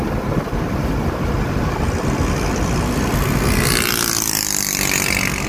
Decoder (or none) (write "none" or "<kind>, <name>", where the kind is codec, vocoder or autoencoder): none